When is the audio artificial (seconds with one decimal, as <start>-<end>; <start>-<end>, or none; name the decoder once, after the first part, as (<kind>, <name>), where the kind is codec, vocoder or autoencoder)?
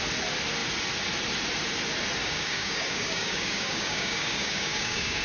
2.2-5.2 (codec, DAC)